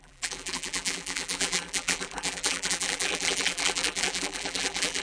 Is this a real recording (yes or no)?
no